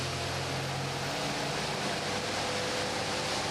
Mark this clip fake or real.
real